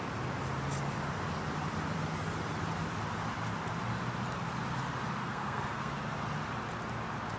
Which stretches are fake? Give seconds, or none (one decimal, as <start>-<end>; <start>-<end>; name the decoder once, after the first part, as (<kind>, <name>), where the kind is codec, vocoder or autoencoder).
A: 5.2-5.9 (codec, SNAC)